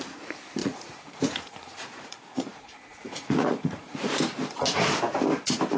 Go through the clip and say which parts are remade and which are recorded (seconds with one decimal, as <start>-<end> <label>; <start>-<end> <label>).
0.0-0.6 recorded; 0.6-4.1 remade; 4.1-5.8 recorded